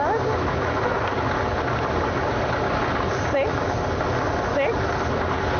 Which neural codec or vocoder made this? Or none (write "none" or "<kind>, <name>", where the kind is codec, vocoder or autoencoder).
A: none